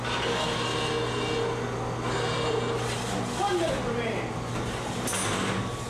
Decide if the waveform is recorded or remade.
recorded